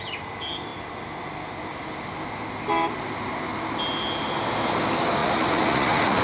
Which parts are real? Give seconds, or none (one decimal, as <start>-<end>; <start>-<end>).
0.0-5.2